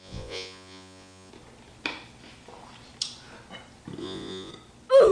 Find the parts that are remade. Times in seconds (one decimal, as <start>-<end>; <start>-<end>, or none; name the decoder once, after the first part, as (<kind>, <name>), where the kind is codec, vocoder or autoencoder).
0.0-1.3 (vocoder, Vocos); 4.0-4.5